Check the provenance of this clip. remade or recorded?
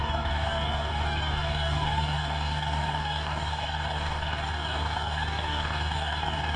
remade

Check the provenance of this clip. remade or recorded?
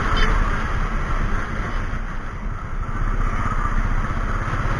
recorded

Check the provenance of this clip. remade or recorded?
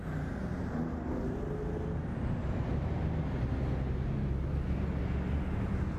recorded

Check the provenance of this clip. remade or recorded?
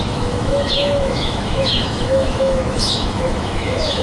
remade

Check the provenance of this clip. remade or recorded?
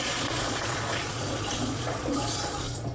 remade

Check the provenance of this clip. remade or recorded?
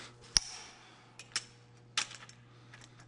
recorded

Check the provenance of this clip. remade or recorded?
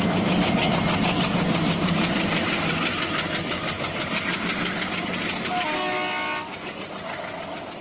recorded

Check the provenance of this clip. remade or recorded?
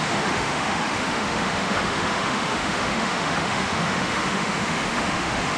remade